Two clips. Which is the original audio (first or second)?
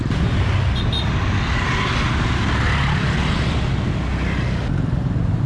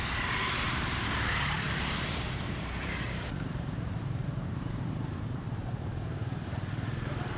first